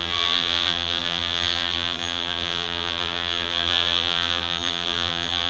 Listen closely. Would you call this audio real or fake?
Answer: fake